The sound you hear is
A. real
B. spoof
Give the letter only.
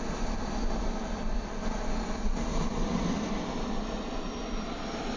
A